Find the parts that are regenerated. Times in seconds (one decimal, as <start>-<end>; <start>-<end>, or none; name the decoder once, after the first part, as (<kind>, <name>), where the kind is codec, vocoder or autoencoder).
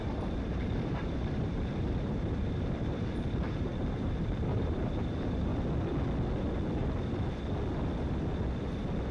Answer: 0.0-5.5 (vocoder, BigVGAN v2)